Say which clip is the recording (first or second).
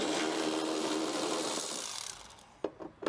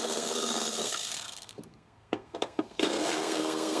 first